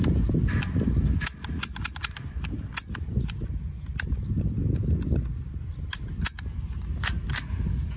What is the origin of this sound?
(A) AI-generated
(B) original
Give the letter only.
B